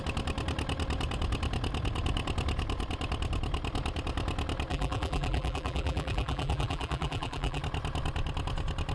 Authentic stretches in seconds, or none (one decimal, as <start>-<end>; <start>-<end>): 0.0-4.7; 7.6-8.9